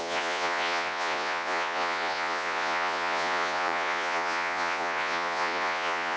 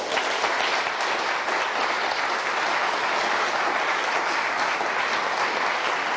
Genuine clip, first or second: second